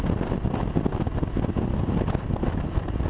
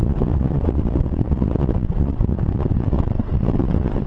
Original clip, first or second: first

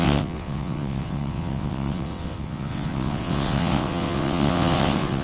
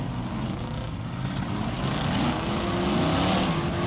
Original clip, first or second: second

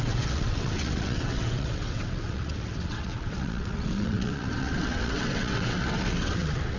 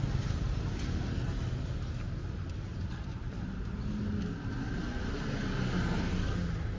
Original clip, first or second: second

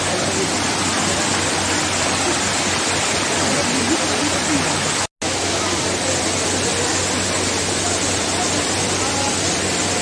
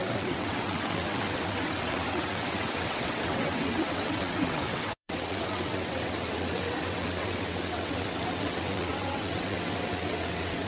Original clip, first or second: first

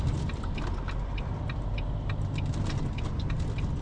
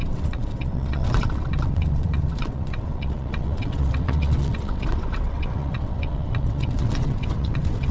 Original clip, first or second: first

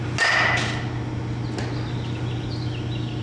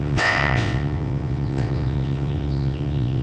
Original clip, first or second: first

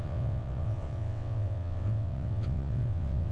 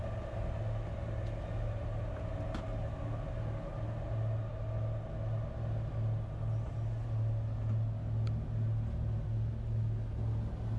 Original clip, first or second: second